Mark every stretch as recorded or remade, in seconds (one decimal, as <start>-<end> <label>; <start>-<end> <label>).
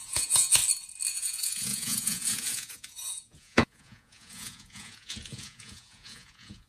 0.0-0.6 remade; 0.6-1.1 recorded; 1.1-6.7 remade